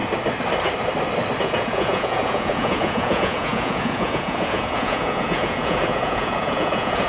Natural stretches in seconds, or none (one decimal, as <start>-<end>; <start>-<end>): 0.0-1.4

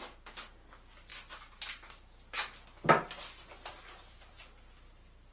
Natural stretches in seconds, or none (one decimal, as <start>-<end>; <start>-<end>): 0.0-5.3

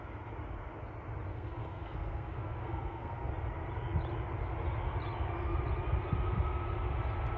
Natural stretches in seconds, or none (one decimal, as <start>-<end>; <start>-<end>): 0.0-1.3; 3.3-7.4

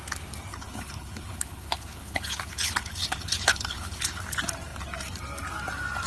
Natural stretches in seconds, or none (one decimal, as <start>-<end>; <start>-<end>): 0.0-0.5; 4.2-6.1

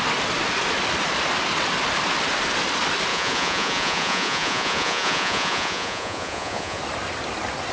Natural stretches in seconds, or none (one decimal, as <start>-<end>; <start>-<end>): 0.0-3.1; 6.8-7.7

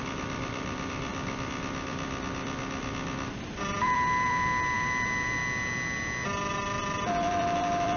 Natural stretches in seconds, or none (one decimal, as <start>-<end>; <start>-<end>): 1.1-3.5; 5.4-6.5

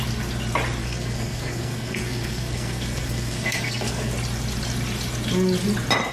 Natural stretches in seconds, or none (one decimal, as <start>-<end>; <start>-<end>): 0.0-0.8; 4.1-6.1

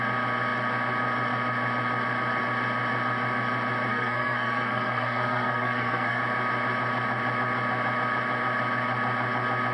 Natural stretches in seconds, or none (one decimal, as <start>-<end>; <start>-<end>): 0.0-3.9; 6.2-9.7